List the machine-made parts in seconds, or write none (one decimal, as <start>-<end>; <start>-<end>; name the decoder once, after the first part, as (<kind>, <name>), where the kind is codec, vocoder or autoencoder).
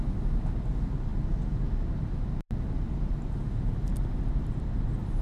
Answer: none